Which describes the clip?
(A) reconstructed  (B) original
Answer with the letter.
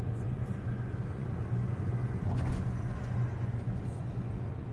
A